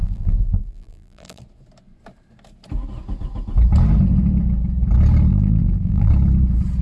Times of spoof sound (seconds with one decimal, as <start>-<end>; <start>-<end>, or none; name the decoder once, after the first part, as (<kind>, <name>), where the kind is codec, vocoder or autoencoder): 0.0-1.4 (vocoder, BigVGAN v2); 5.3-6.1